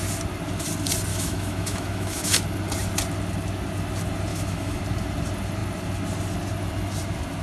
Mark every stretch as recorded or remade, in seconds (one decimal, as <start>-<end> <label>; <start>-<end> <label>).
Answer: 0.0-1.1 recorded; 1.1-2.3 remade; 2.3-4.3 recorded; 4.3-4.8 remade; 4.8-7.4 recorded